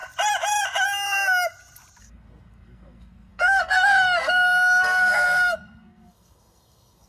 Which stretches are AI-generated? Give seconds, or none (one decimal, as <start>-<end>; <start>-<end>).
2.0-7.1